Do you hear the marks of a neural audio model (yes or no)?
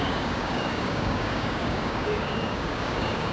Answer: yes